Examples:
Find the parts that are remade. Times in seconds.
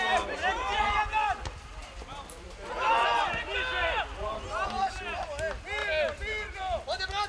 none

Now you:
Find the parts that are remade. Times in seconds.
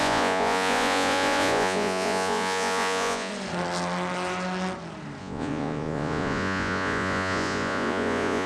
0.0-3.3; 5.2-8.5